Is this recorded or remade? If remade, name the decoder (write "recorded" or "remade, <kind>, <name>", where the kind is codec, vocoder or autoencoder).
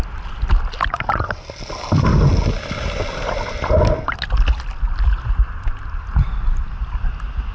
recorded